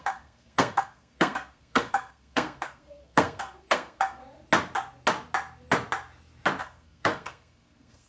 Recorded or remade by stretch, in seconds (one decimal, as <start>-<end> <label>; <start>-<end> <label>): 0.0-4.2 remade; 4.2-6.6 recorded; 6.6-8.1 remade